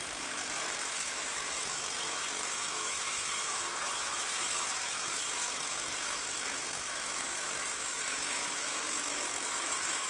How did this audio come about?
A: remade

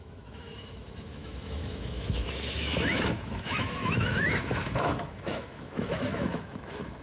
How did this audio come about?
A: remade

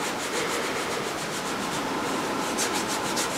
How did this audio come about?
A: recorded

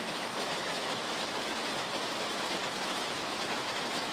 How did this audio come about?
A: remade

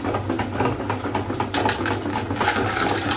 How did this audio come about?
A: recorded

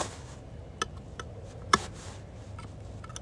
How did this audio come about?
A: recorded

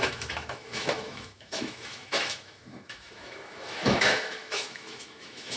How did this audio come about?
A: remade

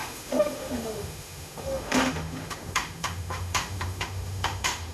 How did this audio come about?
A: remade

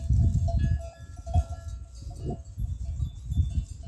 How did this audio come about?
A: recorded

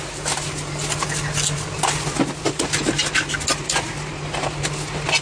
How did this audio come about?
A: recorded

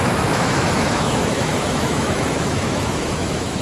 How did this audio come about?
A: remade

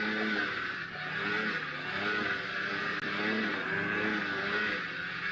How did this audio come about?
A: recorded